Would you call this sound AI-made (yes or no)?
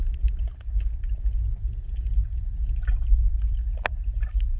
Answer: no